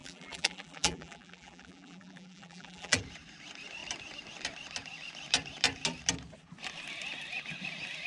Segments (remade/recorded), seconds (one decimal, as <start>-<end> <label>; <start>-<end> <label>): 0.0-3.0 remade; 3.0-8.1 recorded